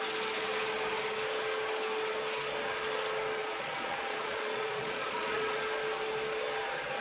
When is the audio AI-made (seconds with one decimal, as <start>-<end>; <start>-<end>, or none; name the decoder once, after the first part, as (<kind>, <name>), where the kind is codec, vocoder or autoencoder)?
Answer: 3.4-5.6 (vocoder, Vocos)